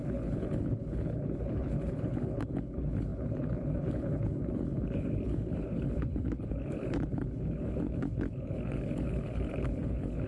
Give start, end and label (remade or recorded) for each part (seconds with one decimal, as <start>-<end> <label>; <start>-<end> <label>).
0.0-10.3 remade